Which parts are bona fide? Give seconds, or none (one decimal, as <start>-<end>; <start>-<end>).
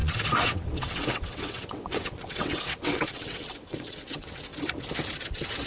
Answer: 4.5-5.3